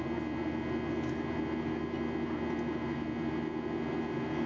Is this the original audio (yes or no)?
yes